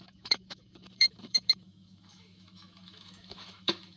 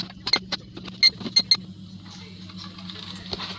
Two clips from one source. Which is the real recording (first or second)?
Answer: second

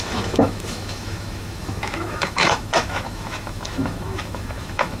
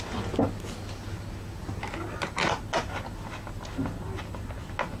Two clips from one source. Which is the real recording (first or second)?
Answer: second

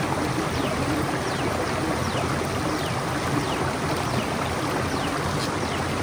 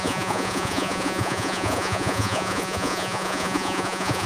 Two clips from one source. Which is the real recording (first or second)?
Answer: first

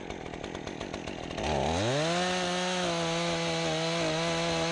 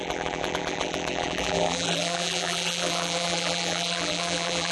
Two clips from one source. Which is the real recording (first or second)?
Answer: first